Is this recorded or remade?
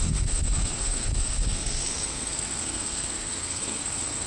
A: remade